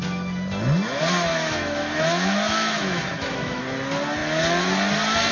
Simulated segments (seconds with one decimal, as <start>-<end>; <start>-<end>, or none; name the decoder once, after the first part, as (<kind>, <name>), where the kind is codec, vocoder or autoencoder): 1.3-3.6 (autoencoder, DAC-VAE)